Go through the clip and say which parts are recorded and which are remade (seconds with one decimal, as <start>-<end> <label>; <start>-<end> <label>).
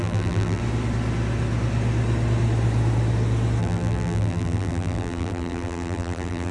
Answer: 0.0-0.6 remade; 0.6-3.6 recorded; 3.6-6.5 remade